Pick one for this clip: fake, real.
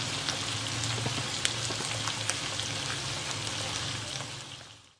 real